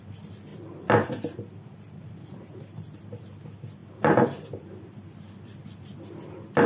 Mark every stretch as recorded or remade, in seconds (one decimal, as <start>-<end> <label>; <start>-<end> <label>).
0.0-0.5 recorded; 0.5-3.3 remade; 3.3-3.8 recorded; 3.8-5.2 remade; 5.2-6.7 recorded